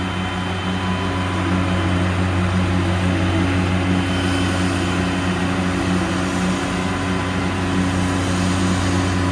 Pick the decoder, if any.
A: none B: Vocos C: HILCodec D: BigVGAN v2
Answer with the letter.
A